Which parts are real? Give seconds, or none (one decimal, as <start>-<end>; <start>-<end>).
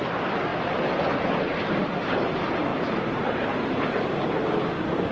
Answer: 0.0-2.7; 3.4-5.1